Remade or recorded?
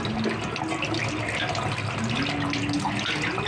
recorded